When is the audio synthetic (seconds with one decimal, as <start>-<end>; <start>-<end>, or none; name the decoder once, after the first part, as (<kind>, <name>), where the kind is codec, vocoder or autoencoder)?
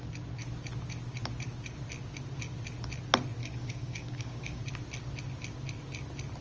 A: 3.4-4.6 (codec, DAC)